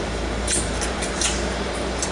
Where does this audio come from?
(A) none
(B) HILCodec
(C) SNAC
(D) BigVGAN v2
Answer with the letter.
D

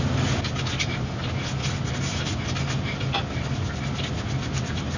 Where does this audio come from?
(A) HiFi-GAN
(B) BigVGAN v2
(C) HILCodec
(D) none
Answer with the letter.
D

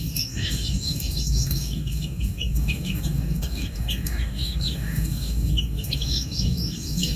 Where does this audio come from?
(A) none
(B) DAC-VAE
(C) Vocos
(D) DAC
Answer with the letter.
D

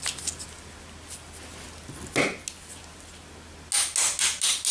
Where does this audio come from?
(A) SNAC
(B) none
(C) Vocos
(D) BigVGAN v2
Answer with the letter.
B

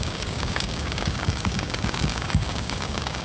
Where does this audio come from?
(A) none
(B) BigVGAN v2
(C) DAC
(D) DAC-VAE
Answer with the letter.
C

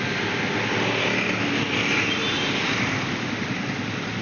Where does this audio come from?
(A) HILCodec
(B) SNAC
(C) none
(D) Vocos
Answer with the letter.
C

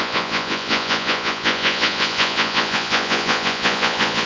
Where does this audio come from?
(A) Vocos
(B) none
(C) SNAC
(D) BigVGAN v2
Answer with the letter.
A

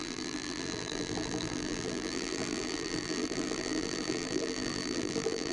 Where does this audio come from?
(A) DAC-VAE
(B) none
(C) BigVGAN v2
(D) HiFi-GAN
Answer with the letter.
C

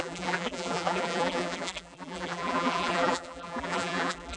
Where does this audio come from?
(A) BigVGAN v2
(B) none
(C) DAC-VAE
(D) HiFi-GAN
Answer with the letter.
A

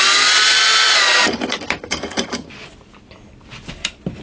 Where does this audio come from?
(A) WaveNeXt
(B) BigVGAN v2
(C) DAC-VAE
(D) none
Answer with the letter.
D